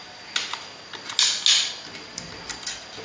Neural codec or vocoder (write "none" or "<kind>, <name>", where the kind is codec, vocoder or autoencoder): none